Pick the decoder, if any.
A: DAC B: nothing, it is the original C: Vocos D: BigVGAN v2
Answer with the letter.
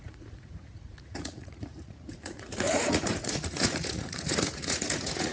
C